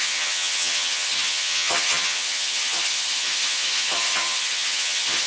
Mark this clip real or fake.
fake